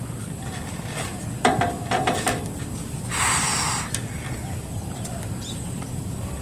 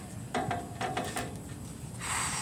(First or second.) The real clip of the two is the second